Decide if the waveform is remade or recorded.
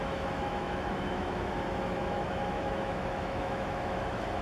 remade